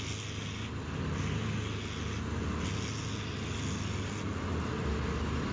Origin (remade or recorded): recorded